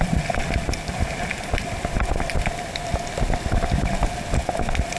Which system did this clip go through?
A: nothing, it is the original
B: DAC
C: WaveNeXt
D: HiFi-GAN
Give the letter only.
A